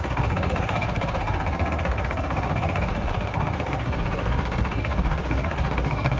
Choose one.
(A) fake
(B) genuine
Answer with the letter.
A